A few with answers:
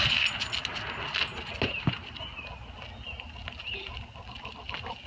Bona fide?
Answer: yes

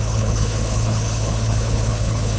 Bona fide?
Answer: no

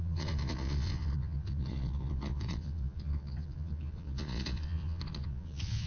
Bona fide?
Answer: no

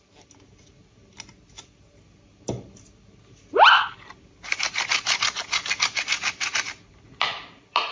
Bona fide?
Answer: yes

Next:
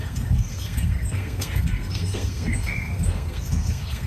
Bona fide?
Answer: no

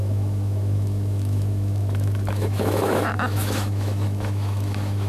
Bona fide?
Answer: no